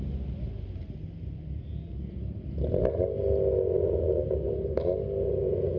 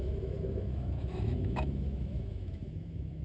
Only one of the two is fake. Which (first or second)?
second